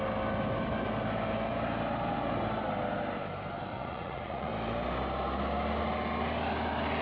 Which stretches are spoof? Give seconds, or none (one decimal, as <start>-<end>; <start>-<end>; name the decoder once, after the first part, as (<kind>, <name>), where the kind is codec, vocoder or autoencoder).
3.7-4.5 (vocoder, Vocos)